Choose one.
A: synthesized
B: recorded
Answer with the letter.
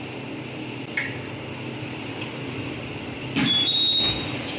B